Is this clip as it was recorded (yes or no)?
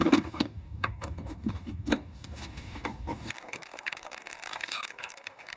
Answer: no